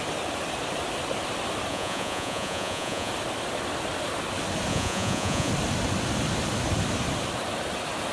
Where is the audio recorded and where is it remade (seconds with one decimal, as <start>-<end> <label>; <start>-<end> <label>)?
0.0-1.7 recorded; 1.7-3.1 remade; 3.1-4.7 recorded; 4.7-5.5 remade; 5.5-8.1 recorded